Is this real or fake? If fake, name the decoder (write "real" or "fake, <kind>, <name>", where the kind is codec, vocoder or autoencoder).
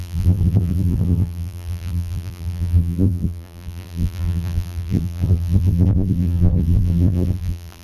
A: fake, vocoder, BigVGAN v2